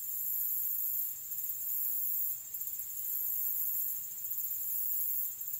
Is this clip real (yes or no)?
no